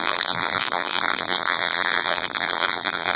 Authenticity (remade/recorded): remade